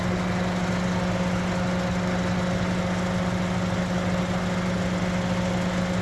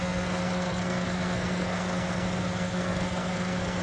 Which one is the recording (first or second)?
first